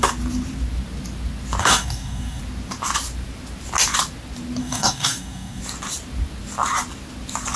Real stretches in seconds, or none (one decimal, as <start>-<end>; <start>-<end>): 0.0-1.6; 2.4-4.6; 5.6-7.6